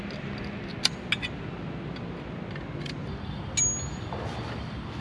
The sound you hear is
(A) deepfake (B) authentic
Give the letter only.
B